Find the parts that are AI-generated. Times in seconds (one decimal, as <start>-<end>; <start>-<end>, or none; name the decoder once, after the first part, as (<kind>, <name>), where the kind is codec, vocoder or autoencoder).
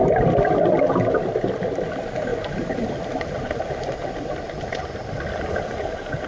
2.3-5.2 (vocoder, BigVGAN v2)